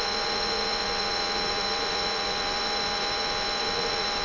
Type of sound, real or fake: fake